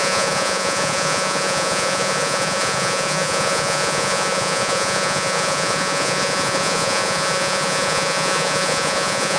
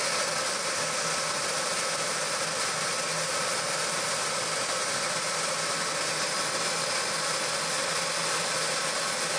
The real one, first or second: second